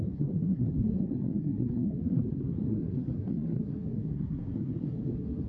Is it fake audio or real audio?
fake